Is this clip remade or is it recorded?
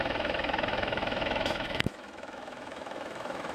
remade